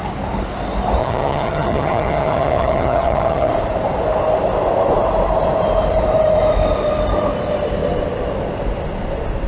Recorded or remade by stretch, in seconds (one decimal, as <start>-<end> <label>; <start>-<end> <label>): 0.0-1.0 recorded; 1.0-3.5 remade; 3.5-9.5 recorded